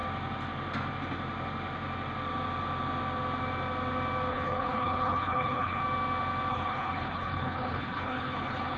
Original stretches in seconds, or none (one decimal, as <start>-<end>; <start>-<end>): 0.0-4.3; 5.8-6.5